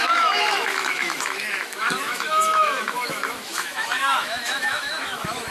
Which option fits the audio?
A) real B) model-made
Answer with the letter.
B